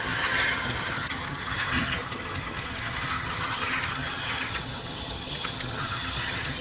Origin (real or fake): fake